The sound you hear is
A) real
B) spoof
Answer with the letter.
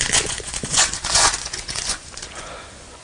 B